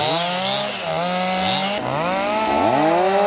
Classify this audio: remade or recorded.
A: recorded